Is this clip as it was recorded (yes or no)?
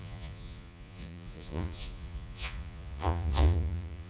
no